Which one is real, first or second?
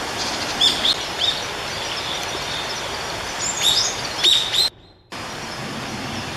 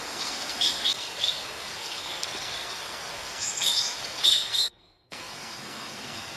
first